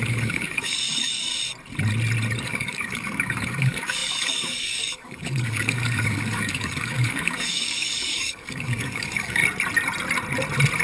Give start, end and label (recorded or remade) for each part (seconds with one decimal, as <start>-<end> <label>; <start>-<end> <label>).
0.0-1.3 remade; 1.3-2.4 recorded; 2.4-9.4 remade; 9.4-10.8 recorded